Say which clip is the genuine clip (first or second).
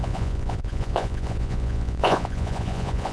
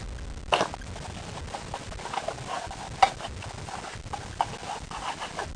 second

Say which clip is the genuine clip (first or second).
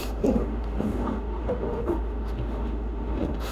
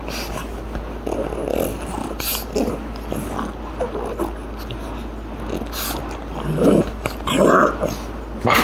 second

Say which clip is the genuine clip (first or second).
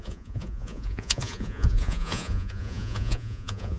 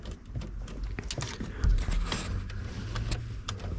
second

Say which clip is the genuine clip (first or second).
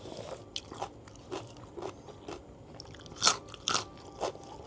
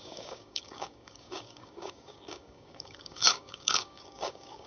first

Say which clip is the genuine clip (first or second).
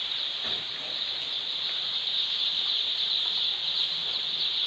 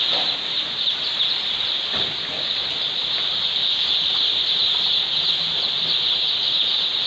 second